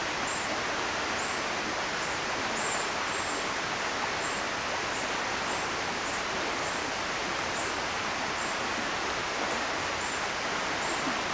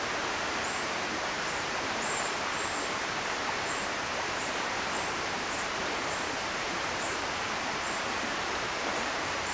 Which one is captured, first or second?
first